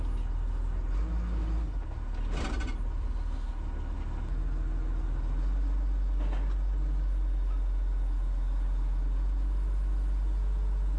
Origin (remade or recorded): recorded